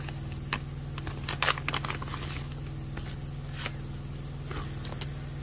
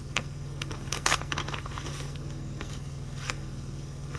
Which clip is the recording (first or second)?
first